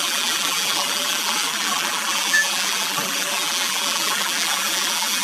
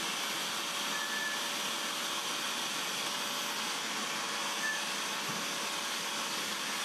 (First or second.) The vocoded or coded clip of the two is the first